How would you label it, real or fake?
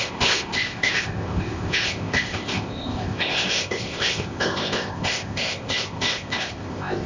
fake